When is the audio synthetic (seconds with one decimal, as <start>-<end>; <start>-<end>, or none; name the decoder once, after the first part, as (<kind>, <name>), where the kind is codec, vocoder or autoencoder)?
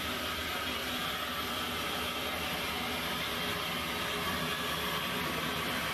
none